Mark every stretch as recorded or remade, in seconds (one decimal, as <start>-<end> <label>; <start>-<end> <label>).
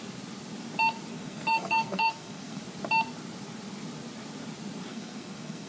0.0-1.1 recorded; 1.1-2.6 remade; 2.6-4.9 recorded; 4.9-5.7 remade